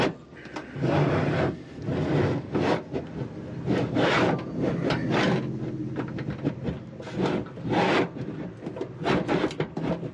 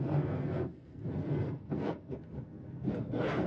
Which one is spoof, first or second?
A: second